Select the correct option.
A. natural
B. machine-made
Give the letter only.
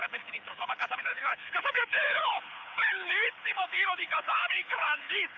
B